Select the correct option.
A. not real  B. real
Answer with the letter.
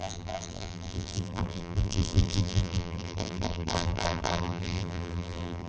A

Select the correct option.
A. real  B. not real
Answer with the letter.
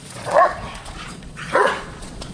B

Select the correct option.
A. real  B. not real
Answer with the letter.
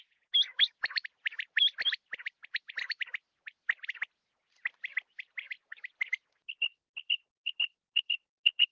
A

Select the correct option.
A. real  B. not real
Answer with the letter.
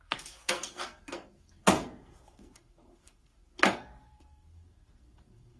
B